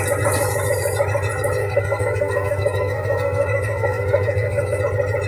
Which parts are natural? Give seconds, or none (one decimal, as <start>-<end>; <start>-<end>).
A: 0.0-1.6; 4.8-5.3